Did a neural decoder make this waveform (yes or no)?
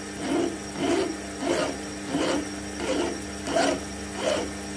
no